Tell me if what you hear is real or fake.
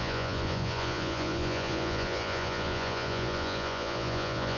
fake